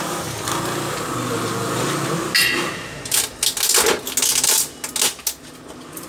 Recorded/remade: recorded